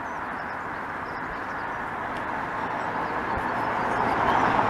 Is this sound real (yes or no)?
yes